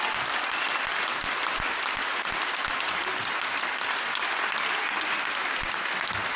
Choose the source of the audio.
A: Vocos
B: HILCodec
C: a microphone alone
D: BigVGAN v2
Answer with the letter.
C